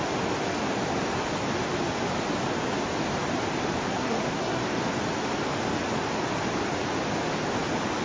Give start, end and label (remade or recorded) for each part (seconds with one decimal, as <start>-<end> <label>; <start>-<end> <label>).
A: 0.0-3.9 recorded; 3.9-4.6 remade; 4.6-8.0 recorded